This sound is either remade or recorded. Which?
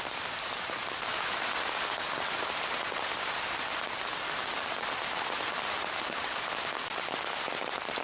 remade